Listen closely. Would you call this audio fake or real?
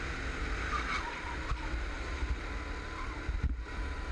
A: real